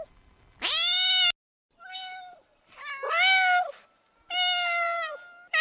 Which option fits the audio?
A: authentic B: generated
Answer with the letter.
A